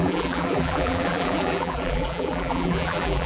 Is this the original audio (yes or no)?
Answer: no